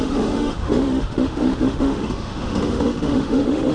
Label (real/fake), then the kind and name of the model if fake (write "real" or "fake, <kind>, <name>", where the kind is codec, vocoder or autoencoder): fake, autoencoder, DAC-VAE